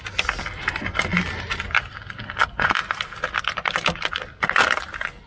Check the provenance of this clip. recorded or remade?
recorded